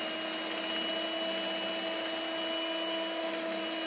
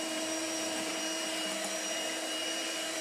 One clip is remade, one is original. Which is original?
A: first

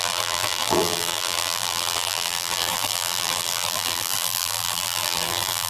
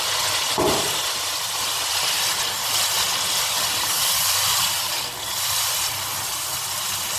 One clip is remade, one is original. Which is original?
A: second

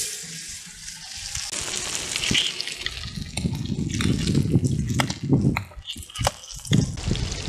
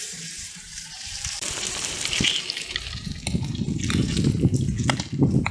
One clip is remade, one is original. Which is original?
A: first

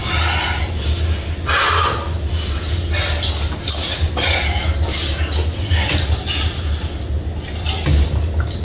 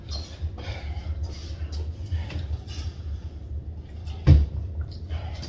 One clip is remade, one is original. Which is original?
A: first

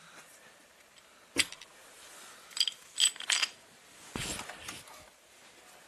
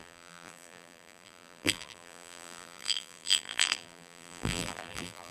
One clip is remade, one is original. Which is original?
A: first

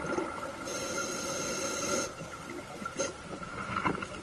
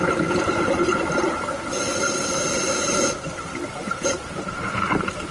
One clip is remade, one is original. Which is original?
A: first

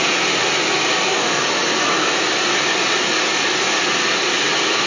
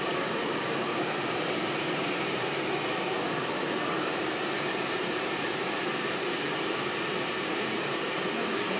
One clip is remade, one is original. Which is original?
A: first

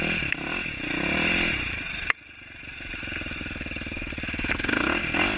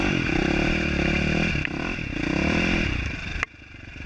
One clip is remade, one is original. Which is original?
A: first